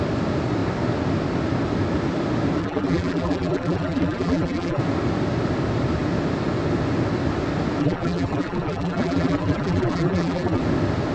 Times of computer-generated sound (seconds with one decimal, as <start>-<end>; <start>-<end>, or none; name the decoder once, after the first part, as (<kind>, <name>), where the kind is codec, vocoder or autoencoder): 2.6-4.8 (vocoder, BigVGAN v2); 7.8-10.6

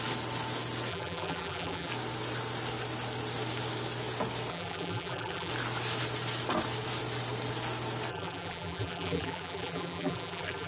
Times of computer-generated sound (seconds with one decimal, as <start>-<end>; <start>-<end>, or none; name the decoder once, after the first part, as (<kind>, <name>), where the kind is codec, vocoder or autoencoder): 0.9-1.9 (vocoder, BigVGAN v2); 4.5-5.5; 8.1-10.7

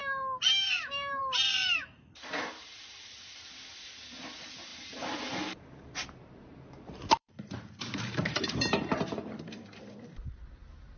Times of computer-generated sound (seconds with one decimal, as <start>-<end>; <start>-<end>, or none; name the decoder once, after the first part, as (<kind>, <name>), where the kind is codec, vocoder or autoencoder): 0.0-1.2 (vocoder, BigVGAN v2); 1.6-3.4; 4.7-9.8